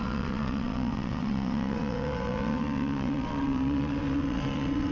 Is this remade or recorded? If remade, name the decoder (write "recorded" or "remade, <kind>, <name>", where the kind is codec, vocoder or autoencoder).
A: remade, vocoder, WaveNeXt